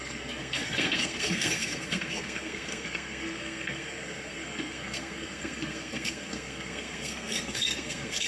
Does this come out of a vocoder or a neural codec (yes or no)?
yes